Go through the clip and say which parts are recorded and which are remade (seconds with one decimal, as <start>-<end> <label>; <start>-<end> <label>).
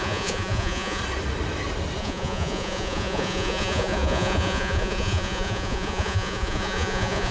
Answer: 0.0-1.0 remade; 1.0-2.0 recorded; 2.0-7.3 remade